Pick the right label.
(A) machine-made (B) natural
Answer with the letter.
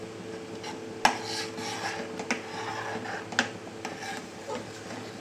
B